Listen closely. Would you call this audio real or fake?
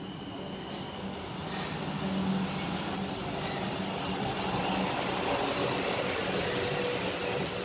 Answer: real